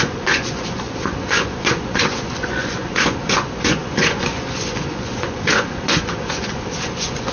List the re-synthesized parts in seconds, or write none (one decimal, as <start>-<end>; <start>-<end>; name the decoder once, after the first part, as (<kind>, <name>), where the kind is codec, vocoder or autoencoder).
0.0-7.3 (vocoder, Vocos)